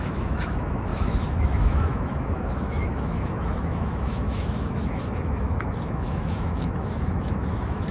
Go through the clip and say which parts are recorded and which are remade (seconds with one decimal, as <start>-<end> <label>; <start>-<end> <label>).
0.0-7.9 remade